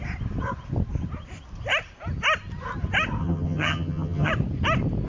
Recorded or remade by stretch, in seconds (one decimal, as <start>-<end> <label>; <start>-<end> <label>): 0.0-3.2 recorded; 3.2-4.3 remade; 4.3-5.1 recorded